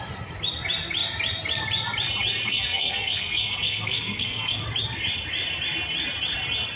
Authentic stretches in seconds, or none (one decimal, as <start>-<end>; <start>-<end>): 0.0-2.5; 4.6-6.8